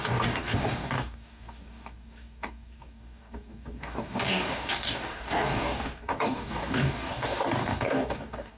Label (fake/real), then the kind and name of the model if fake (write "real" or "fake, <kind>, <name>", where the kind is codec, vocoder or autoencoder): fake, codec, DAC